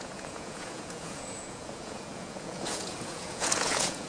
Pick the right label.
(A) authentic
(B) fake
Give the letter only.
B